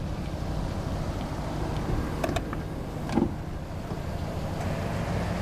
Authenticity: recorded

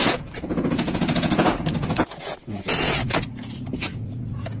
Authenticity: remade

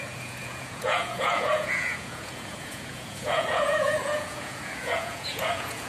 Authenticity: remade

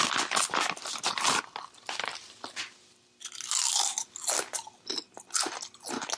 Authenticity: recorded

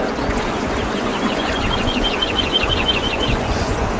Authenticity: remade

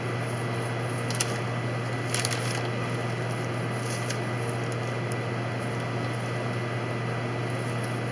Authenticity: recorded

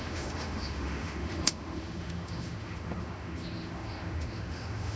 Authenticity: remade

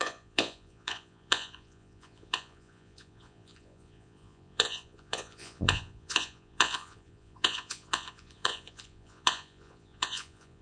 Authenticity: remade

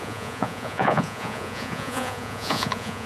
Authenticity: remade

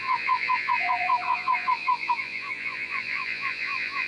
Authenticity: remade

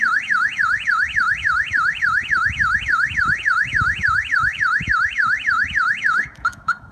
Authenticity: remade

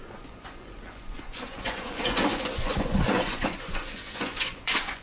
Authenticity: remade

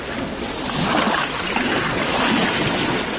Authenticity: recorded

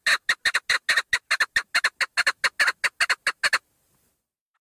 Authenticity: recorded